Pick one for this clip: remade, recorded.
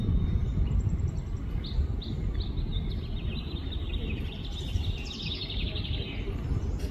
recorded